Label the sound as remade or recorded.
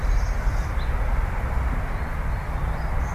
recorded